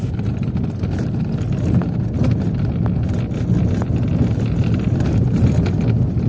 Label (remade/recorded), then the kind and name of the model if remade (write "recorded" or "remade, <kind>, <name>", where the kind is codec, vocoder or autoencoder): recorded